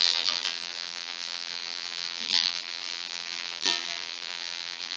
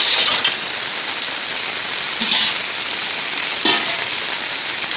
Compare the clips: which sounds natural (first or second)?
second